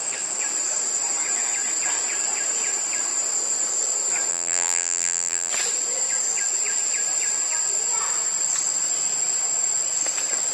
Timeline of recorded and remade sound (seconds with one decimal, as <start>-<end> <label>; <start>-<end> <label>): 0.0-4.3 recorded; 4.3-5.5 remade; 5.5-10.5 recorded